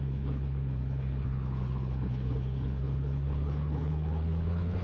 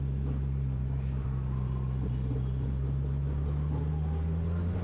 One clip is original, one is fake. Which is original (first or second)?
second